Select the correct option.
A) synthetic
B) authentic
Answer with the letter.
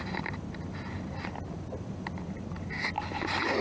B